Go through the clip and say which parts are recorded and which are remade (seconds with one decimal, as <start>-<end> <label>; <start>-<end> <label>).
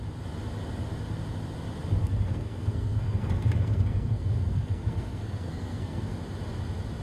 0.0-2.0 recorded; 2.0-6.2 remade; 6.2-7.0 recorded